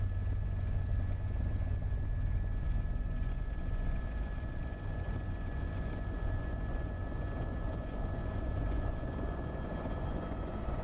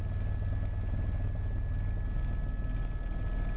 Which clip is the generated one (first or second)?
first